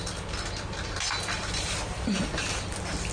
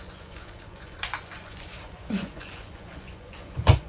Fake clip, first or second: second